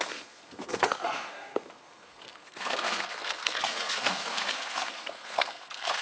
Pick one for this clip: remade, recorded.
remade